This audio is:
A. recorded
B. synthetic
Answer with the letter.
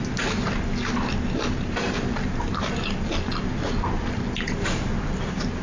A